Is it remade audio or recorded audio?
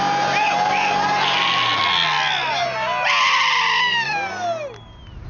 recorded